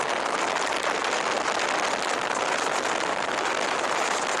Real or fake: real